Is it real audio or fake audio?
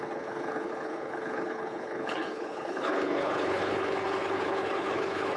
fake